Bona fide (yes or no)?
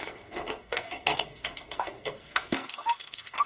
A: no